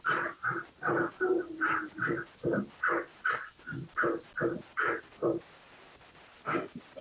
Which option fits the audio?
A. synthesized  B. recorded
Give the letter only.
B